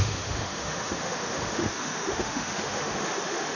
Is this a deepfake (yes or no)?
yes